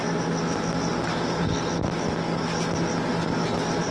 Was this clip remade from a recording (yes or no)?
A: no